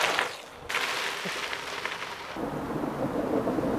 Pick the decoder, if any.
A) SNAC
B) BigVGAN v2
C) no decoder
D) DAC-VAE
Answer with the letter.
C